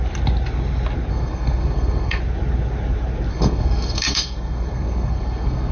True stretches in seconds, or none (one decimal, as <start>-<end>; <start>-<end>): 0.0-1.1; 2.2-3.3

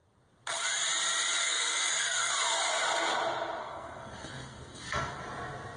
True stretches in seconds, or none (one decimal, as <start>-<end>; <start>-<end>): 0.0-1.4; 2.3-3.6; 5.2-5.8

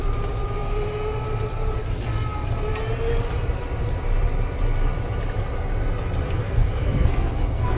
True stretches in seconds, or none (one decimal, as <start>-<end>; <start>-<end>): 0.0-6.4

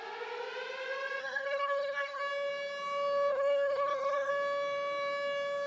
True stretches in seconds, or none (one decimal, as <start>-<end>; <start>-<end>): 0.0-1.2; 2.2-3.3; 4.3-5.7

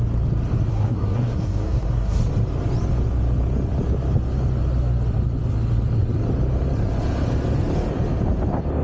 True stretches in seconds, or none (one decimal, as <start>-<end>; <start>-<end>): 0.0-0.7; 2.2-8.8

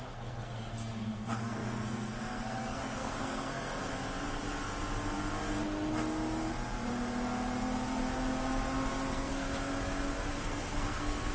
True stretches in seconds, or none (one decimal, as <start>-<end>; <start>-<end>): 3.9-9.1; 9.5-10.3

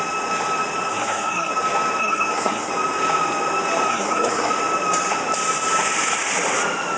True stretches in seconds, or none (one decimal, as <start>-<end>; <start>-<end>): 0.0-0.9; 1.5-2.0; 2.7-3.9; 4.5-7.0